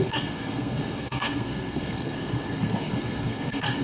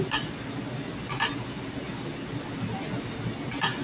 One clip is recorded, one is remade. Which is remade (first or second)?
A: first